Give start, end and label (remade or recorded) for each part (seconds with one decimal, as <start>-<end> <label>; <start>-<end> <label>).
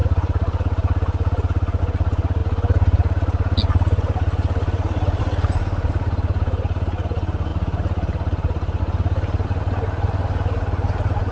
0.0-11.3 recorded